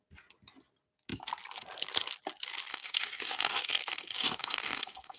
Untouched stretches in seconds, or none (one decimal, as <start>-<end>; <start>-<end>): 0.0-2.7